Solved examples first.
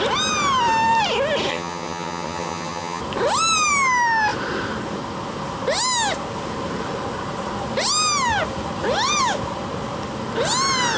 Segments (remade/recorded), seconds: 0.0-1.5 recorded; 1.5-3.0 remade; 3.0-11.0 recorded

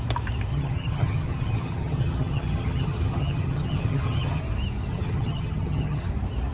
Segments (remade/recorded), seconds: 0.0-0.5 recorded; 0.5-4.4 remade; 4.4-4.9 recorded; 4.9-6.1 remade; 6.1-6.5 recorded

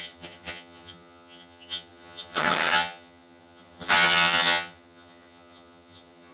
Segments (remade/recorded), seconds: 0.0-6.3 remade

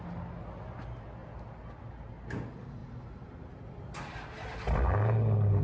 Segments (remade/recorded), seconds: 0.0-5.6 recorded

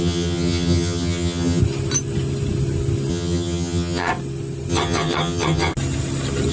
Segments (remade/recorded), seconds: 0.0-1.6 remade; 1.6-3.1 recorded; 3.1-4.1 remade; 4.1-4.7 recorded; 4.7-5.7 remade; 5.7-6.5 recorded